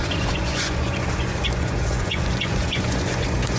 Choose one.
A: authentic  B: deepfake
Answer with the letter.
B